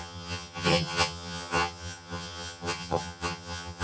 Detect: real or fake fake